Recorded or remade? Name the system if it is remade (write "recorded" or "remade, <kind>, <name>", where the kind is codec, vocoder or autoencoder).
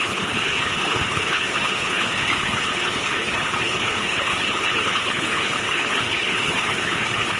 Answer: remade, codec, HILCodec